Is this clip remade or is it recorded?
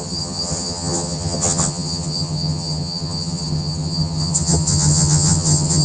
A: remade